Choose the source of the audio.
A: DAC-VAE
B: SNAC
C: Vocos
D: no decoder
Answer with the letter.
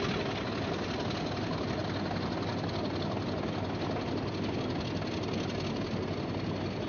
D